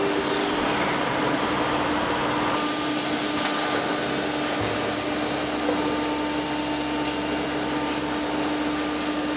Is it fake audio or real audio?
real